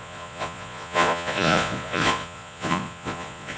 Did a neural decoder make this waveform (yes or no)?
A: yes